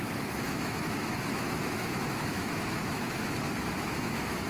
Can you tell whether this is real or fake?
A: fake